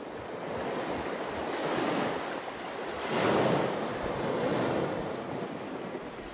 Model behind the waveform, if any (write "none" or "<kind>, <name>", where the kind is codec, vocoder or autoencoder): none